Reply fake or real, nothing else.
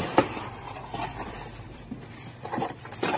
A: fake